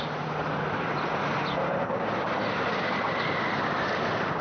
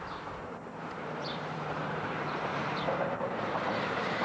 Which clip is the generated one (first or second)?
second